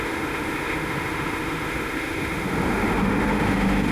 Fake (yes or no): yes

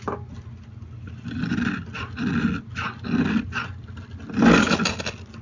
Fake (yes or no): no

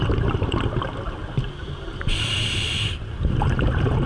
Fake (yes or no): no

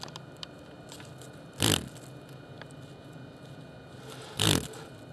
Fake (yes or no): no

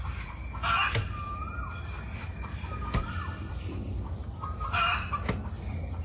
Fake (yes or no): no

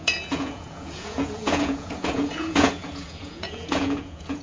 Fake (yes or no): yes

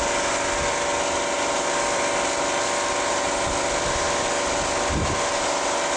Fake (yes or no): yes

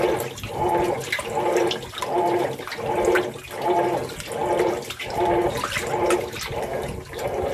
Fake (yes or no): no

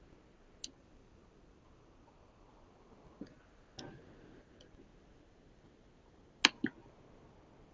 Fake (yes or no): no